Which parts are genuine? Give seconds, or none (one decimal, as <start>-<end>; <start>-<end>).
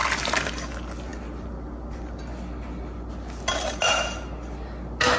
0.5-5.2